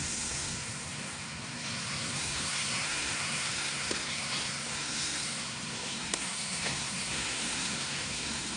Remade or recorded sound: remade